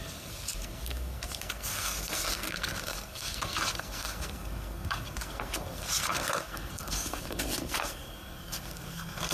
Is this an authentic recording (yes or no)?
no